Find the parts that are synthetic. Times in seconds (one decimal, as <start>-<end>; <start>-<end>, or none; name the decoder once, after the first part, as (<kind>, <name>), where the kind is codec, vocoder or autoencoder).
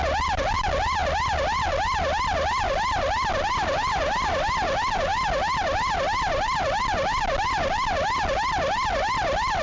none